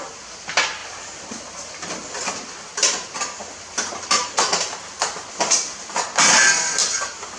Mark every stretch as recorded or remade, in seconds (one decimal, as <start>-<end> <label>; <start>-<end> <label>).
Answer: 0.0-7.4 recorded